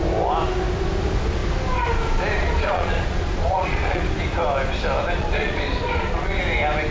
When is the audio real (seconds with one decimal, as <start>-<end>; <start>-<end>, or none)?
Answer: 0.0-2.4; 4.0-5.2; 6.4-6.9